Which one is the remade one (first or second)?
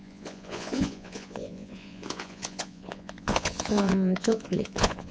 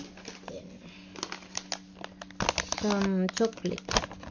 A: first